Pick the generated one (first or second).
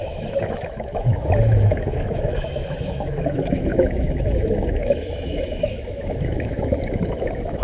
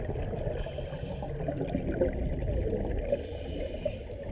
first